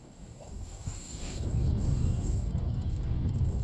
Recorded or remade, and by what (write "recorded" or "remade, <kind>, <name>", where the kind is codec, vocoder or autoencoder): remade, codec, DAC